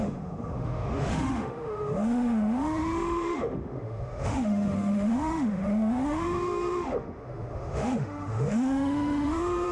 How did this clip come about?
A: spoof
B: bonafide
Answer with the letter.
A